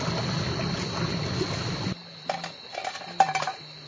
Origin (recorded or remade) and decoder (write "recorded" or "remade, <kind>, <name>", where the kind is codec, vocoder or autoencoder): recorded